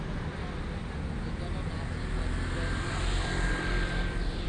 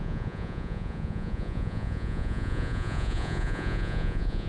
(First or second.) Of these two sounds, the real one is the first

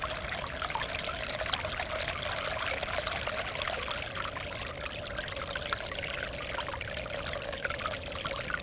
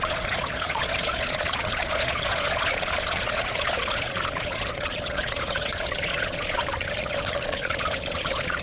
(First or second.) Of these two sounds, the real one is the first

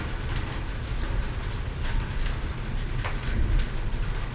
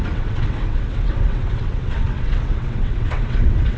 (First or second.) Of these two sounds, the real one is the first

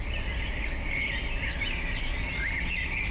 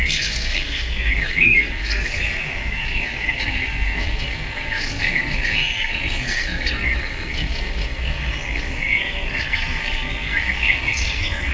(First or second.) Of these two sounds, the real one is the first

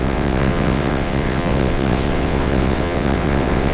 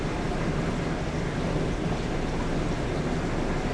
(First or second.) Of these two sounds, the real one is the second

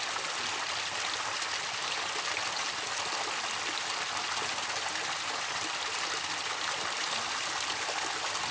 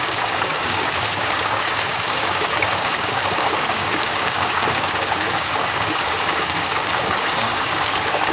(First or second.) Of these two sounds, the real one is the first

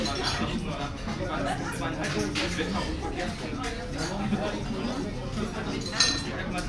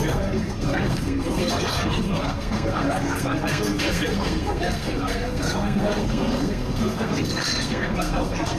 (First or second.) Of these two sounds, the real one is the first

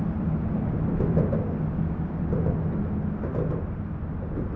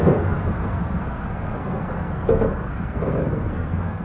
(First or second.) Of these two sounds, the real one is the first